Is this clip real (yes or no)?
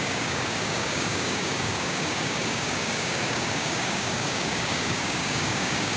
no